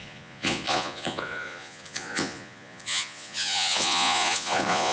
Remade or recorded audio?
remade